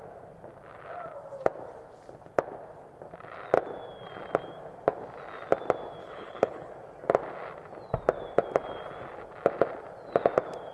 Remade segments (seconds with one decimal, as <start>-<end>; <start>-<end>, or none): 6.0-6.7

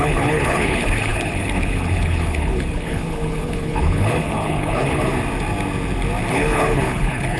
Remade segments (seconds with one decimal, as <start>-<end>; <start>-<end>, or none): 0.0-5.1; 6.3-7.4

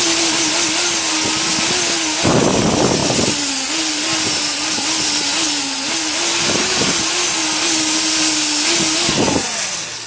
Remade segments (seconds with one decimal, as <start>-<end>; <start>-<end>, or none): none

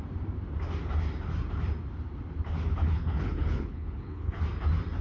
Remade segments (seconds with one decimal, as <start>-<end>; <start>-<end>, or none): 2.7-4.4

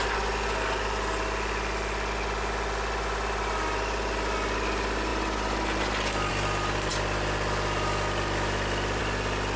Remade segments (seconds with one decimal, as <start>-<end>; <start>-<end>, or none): none

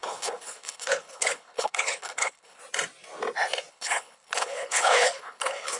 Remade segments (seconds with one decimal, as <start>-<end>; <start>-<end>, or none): 0.0-2.6; 3.7-5.8

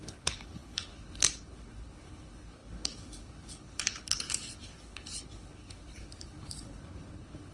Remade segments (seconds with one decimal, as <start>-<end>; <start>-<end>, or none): 0.0-7.5